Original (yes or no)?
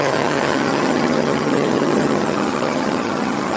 no